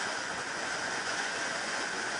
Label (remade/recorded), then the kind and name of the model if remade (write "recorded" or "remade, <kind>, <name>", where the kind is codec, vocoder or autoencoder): remade, vocoder, Vocos